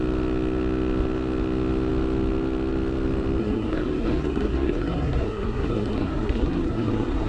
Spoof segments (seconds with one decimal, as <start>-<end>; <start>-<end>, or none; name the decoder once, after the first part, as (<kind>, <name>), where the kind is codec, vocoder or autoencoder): 3.4-7.3 (codec, SNAC)